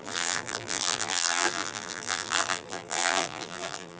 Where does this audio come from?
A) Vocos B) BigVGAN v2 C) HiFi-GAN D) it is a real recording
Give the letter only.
B